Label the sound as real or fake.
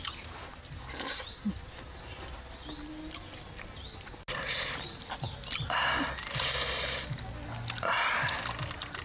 real